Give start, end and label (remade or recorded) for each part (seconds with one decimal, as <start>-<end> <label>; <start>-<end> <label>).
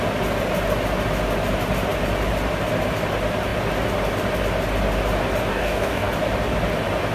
0.0-5.5 recorded; 5.5-6.1 remade; 6.1-7.1 recorded